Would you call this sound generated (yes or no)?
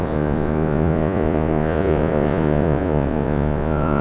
yes